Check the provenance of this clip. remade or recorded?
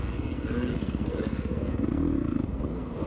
remade